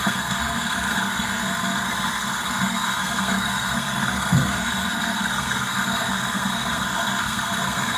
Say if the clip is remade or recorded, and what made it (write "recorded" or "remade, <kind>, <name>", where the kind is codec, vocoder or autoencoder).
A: remade, codec, SNAC